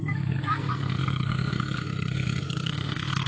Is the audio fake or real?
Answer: fake